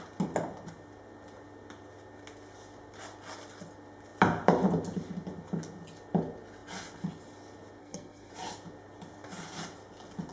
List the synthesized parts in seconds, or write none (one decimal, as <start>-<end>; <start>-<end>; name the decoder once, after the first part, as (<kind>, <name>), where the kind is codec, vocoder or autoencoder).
7.8-8.3 (codec, SNAC)